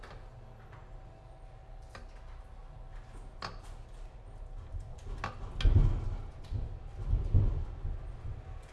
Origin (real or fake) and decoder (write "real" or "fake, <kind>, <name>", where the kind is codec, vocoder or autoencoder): real